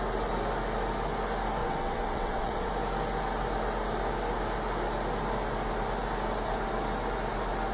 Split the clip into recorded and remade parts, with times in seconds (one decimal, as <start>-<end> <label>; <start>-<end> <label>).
0.0-1.6 recorded; 1.6-2.7 remade; 2.7-7.7 recorded